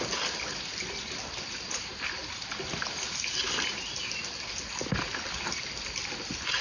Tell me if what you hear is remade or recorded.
recorded